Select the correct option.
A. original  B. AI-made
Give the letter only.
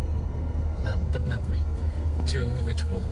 B